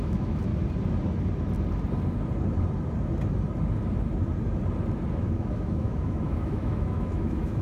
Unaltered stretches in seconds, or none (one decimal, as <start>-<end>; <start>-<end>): 0.5-5.1